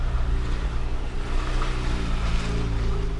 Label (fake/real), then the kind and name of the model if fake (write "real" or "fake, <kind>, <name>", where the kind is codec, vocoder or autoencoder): real